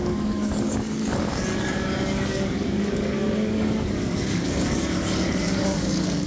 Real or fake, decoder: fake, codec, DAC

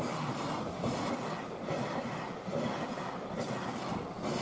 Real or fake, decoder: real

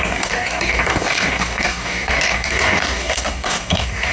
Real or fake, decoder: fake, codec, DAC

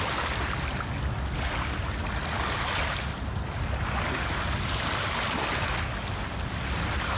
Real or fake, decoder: real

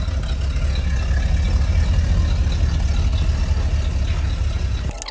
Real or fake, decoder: real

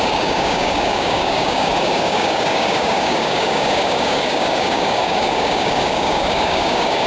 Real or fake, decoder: fake, codec, DAC